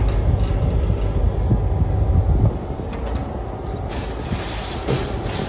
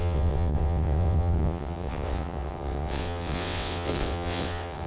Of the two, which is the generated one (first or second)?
second